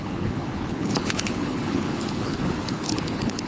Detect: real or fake fake